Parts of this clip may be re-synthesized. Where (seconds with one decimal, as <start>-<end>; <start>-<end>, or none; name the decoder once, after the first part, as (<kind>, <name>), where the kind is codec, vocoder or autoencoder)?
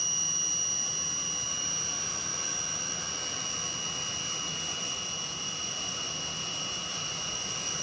4.7-6.1 (vocoder, Vocos); 6.9-7.8